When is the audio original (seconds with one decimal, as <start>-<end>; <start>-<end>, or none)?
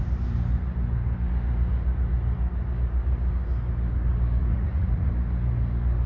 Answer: 0.0-4.4; 5.1-6.1